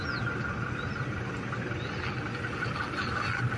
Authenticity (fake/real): real